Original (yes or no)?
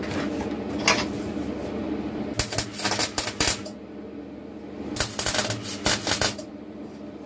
yes